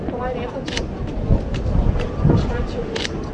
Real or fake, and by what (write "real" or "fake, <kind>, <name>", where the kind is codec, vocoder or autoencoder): fake, vocoder, BigVGAN v2